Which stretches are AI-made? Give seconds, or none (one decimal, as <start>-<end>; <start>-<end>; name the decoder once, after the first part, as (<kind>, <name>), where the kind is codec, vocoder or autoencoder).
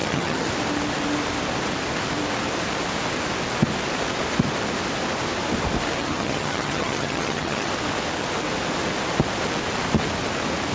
0.0-0.5 (vocoder, HiFi-GAN); 6.0-7.7